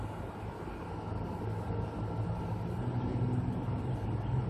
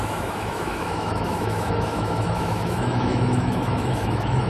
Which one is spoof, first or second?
second